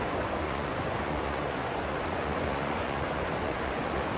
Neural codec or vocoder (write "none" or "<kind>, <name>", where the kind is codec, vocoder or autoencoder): vocoder, Vocos